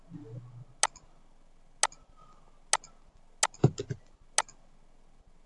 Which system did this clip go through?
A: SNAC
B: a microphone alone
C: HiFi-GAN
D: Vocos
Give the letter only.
B